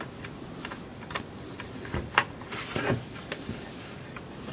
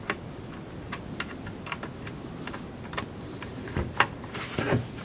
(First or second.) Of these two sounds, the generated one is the first